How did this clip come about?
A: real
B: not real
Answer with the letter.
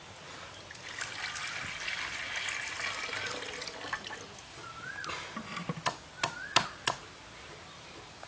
A